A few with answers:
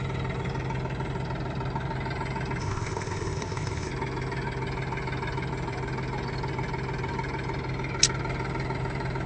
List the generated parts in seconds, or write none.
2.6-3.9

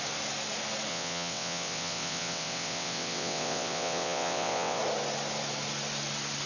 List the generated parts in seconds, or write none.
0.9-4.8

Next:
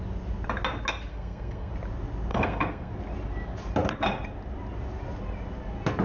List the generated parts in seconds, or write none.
1.1-1.7; 2.3-2.9